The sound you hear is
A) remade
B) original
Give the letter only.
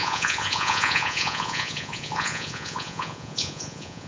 A